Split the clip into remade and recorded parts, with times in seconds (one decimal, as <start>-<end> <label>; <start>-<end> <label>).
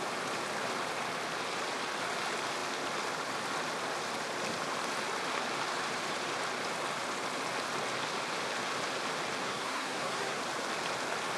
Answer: 0.0-9.4 recorded; 9.4-10.4 remade; 10.4-11.4 recorded